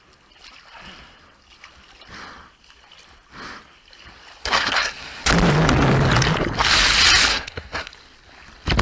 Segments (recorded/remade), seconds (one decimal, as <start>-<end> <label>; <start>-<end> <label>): 0.0-4.4 recorded; 4.4-5.3 remade; 5.3-7.3 recorded; 7.3-7.9 remade; 7.9-8.8 recorded